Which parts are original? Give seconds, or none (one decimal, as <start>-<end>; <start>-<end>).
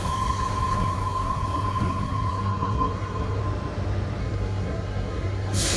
3.4-4.2